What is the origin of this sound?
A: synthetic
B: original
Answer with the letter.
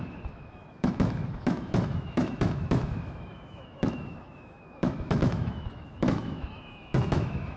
A